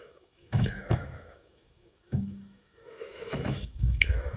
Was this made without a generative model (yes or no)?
no